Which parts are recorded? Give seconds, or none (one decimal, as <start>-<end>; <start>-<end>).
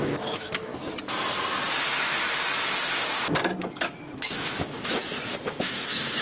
0.7-3.6; 5.0-5.6